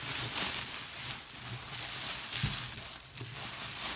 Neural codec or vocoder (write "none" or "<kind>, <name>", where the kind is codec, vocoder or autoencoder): none